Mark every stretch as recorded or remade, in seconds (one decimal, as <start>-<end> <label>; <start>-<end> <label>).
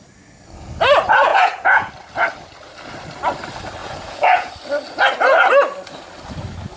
0.0-1.3 recorded; 1.3-1.9 remade; 1.9-3.8 recorded; 3.8-4.5 remade; 4.5-6.8 recorded